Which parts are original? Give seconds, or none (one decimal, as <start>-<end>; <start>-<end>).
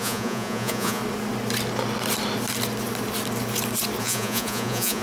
1.0-4.0